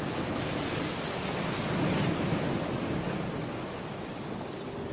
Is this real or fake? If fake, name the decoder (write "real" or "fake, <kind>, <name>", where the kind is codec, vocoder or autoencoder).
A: real